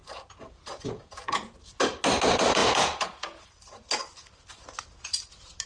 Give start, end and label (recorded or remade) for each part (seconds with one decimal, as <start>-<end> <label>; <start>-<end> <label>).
0.0-1.5 remade; 1.5-2.6 recorded; 2.6-4.0 remade; 4.0-5.7 recorded